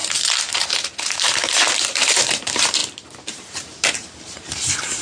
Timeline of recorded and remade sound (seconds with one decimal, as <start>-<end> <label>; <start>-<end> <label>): 0.0-0.5 recorded; 0.5-2.8 remade; 2.8-3.3 recorded; 3.3-5.0 remade

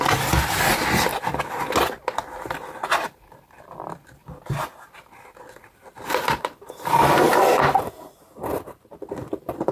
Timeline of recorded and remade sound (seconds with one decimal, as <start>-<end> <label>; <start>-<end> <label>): 0.0-1.1 remade; 1.1-6.1 recorded; 6.1-9.7 remade